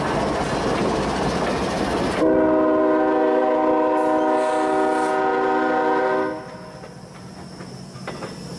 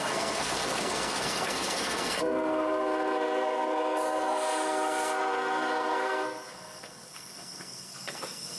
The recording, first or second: first